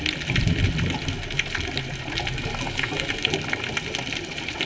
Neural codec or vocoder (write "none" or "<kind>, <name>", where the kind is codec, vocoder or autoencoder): none